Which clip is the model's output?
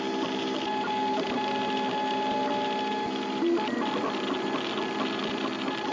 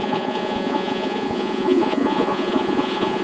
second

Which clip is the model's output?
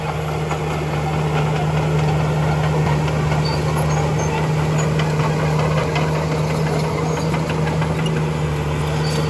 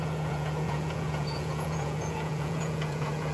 second